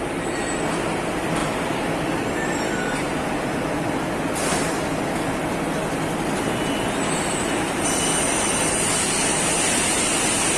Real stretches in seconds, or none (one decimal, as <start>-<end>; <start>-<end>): 0.0-10.6